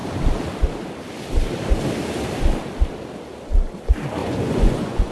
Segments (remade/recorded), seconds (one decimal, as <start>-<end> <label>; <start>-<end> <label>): 0.0-4.2 recorded; 4.2-5.1 remade